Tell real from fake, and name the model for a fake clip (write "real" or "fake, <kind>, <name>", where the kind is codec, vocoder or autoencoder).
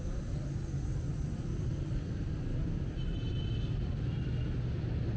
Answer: real